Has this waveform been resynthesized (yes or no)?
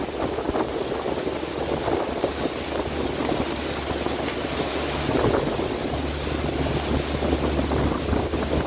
no